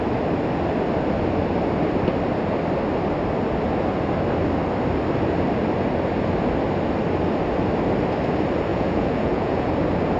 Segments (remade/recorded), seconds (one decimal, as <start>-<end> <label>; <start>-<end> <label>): 0.0-8.7 recorded; 8.7-9.7 remade; 9.7-10.2 recorded